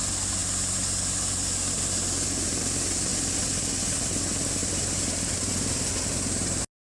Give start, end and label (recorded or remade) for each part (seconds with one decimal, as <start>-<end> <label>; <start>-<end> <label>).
0.0-4.6 recorded; 4.6-5.5 remade; 5.5-6.9 recorded